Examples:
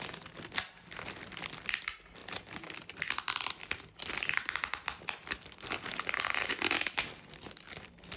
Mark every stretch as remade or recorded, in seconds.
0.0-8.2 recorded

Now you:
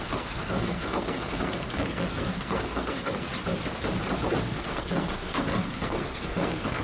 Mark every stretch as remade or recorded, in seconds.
0.0-3.3 remade; 3.3-4.4 recorded; 4.4-6.8 remade

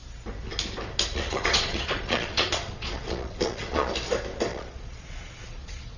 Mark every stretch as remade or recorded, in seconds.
0.0-1.1 recorded; 1.1-3.9 remade; 3.9-4.5 recorded; 4.5-6.0 remade

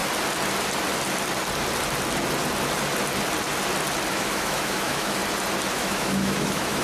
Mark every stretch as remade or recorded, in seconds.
0.0-4.1 recorded; 4.1-5.2 remade; 5.2-5.7 recorded; 5.7-6.8 remade

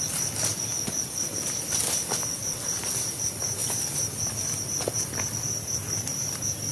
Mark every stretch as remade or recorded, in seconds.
0.0-0.5 remade; 0.5-2.5 recorded; 2.5-3.6 remade; 3.6-5.4 recorded; 5.4-6.7 remade

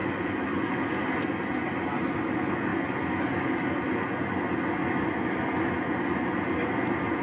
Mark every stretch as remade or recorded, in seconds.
0.0-0.9 remade; 0.9-7.2 recorded

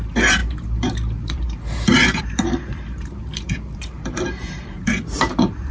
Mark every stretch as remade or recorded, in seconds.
0.0-5.7 remade